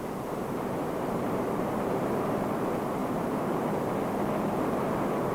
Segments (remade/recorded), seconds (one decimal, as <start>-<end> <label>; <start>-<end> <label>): 0.0-0.4 recorded; 0.4-2.1 remade; 2.1-3.0 recorded; 3.0-3.8 remade; 3.8-5.3 recorded